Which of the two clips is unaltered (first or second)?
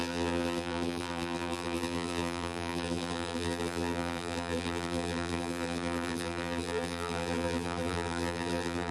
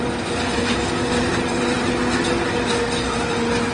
second